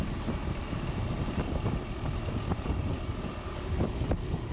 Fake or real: real